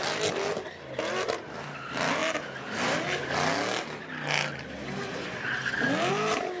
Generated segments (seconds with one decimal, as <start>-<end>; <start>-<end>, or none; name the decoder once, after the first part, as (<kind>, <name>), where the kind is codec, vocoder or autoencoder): none